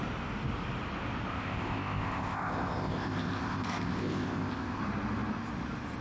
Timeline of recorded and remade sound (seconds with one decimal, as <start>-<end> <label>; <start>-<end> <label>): 0.0-1.3 recorded; 1.3-4.8 remade; 4.8-6.0 recorded